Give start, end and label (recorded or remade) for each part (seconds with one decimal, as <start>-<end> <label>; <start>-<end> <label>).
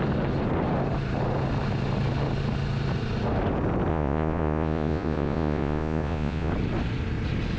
0.0-3.9 recorded; 3.9-6.5 remade; 6.5-7.6 recorded